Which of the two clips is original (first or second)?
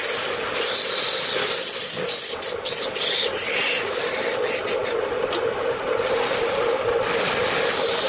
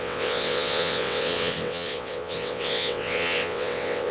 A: first